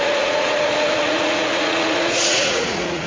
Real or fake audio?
fake